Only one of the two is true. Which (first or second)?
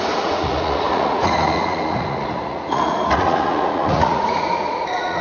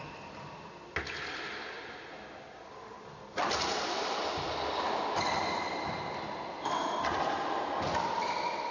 second